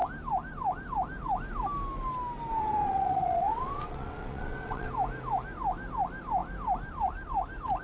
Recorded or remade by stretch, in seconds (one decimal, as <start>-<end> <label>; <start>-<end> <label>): 0.0-2.5 recorded; 2.5-4.9 remade; 4.9-7.8 recorded